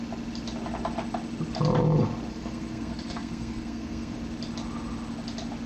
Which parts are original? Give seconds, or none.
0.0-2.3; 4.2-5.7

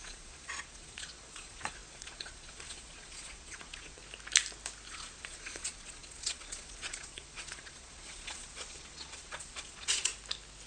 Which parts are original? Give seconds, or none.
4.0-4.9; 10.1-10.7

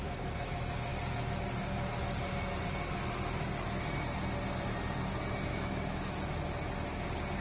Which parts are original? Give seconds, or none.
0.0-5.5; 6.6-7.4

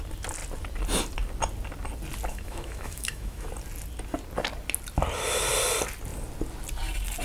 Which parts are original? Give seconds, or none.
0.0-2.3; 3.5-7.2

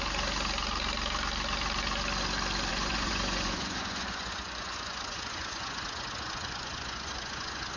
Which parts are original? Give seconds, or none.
0.0-2.7

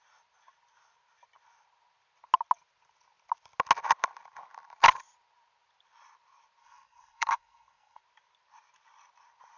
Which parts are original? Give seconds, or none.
0.0-6.6; 8.0-9.6

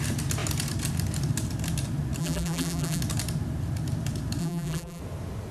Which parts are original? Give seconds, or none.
0.0-2.2; 3.0-4.4; 5.0-5.5

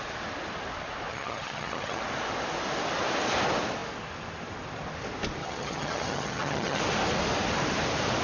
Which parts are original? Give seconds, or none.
0.0-1.1; 2.0-5.4; 6.8-8.2